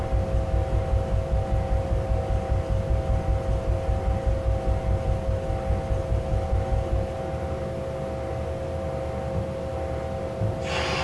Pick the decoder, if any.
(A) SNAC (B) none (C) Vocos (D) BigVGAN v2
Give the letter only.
B